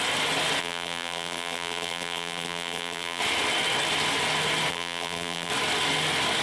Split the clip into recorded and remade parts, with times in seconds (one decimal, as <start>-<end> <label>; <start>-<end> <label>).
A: 0.0-0.6 recorded; 0.6-3.2 remade; 3.2-4.7 recorded; 4.7-5.5 remade; 5.5-6.4 recorded